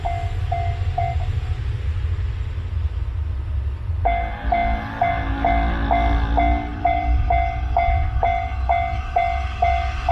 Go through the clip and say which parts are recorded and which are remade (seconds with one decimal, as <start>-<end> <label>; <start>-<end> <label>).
0.0-6.7 recorded; 6.7-7.2 remade; 7.2-10.1 recorded